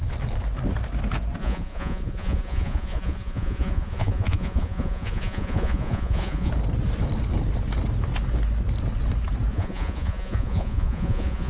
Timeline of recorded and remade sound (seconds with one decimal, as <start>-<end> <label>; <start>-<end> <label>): 0.0-1.4 recorded; 1.4-6.5 remade; 6.5-9.5 recorded; 9.5-11.5 remade